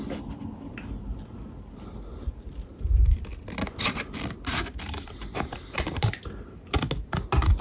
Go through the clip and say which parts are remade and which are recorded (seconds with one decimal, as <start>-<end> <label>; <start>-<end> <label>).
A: 0.0-2.1 recorded; 2.1-6.5 remade; 6.5-7.6 recorded